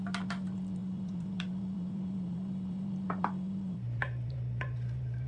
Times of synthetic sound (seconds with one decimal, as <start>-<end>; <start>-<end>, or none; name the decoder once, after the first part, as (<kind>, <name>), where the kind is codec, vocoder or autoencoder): 0.8-4.0 (vocoder, BigVGAN v2)